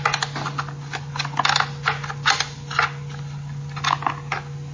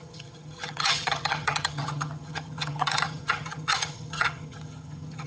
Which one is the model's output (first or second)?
second